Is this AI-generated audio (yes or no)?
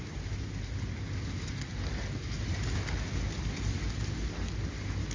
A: no